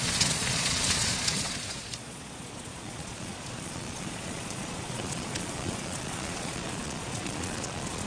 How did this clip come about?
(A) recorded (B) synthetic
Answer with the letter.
B